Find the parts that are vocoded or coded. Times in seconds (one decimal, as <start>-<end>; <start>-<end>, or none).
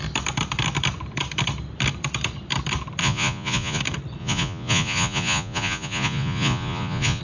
3.0-3.8; 4.2-7.2